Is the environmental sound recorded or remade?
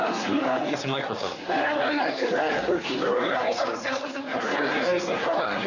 remade